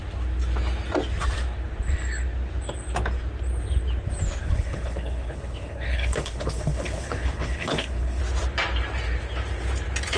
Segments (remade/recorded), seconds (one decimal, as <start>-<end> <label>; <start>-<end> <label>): 0.0-4.4 recorded; 4.4-8.2 remade; 8.2-10.2 recorded